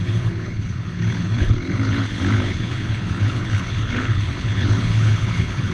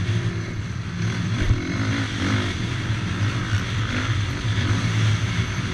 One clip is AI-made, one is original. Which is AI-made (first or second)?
first